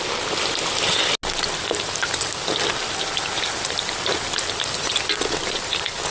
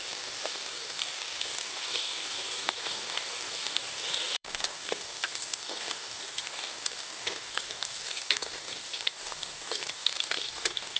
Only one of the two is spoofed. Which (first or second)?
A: second